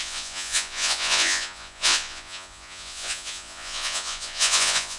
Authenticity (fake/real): fake